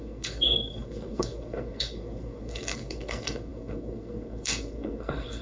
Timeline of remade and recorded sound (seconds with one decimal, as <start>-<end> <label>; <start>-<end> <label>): 0.0-5.4 remade